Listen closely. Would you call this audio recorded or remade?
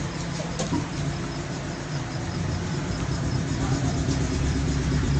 remade